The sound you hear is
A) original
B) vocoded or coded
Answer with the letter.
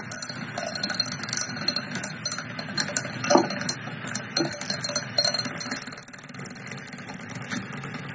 A